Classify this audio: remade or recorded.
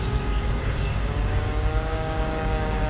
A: remade